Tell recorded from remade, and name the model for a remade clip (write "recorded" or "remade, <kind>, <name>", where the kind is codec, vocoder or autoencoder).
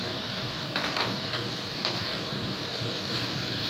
remade, codec, DAC